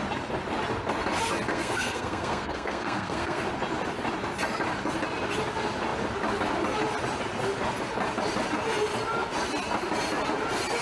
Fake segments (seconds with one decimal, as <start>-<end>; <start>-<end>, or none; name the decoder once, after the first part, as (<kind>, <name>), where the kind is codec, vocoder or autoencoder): 1.5-3.4 (codec, SNAC)